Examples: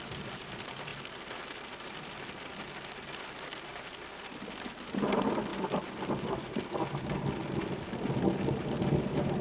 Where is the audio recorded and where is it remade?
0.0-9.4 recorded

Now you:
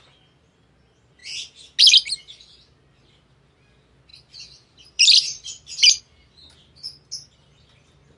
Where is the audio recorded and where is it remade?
0.0-4.1 recorded; 4.1-6.0 remade; 6.0-8.2 recorded

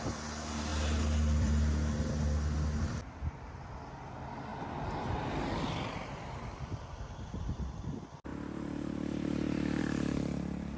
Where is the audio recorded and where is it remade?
0.0-4.5 remade; 4.5-5.0 recorded; 5.0-8.3 remade; 8.3-9.8 recorded; 9.8-10.8 remade

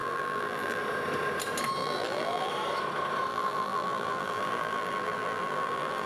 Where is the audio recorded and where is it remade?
0.0-0.8 remade; 0.8-1.8 recorded; 1.8-2.5 remade; 2.5-3.3 recorded; 3.3-6.1 remade

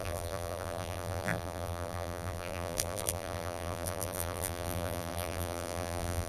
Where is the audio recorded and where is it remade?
0.0-6.3 remade

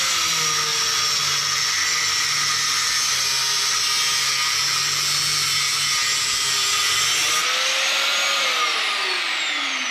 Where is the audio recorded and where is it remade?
0.0-9.9 recorded